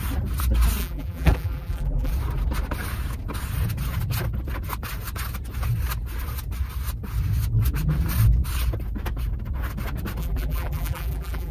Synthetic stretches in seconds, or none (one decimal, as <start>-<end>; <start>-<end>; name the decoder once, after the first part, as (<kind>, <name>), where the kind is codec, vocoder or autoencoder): 0.8-2.1 (vocoder, BigVGAN v2); 10.2-11.5